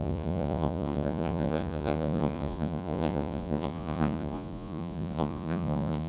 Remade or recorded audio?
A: remade